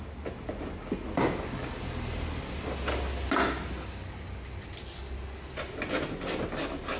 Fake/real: real